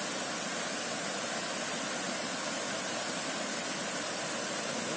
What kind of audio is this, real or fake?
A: real